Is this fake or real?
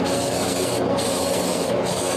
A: fake